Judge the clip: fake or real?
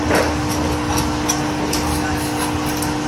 real